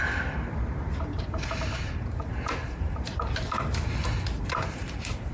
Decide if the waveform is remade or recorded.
remade